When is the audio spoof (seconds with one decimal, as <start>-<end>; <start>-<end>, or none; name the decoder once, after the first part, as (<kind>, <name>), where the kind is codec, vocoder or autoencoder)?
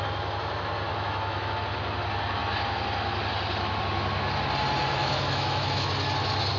0.9-1.5 (autoencoder, DAC-VAE); 5.0-5.9